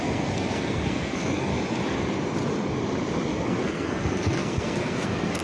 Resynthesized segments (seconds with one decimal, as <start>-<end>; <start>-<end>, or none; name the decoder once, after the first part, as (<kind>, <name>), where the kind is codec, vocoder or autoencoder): 0.0-1.5 (codec, SNAC); 3.3-5.4

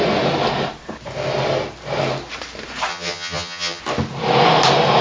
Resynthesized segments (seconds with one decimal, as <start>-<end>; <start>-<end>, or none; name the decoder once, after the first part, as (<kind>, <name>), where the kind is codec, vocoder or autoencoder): 2.9-3.8 (vocoder, HiFi-GAN)

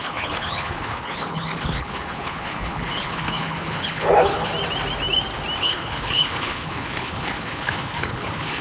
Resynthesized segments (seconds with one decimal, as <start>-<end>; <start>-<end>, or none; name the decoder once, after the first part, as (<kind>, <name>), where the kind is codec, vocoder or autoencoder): 0.0-4.5 (codec, HILCodec); 5.6-8.6

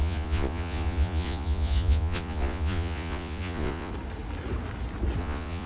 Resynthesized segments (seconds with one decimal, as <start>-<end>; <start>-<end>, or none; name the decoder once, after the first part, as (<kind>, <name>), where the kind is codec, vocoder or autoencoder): 0.0-3.9 (vocoder, Vocos); 5.2-5.7